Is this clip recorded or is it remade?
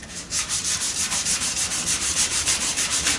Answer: remade